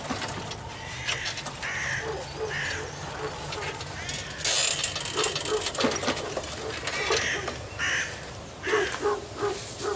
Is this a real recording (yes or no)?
yes